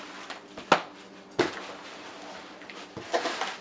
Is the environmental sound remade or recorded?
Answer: recorded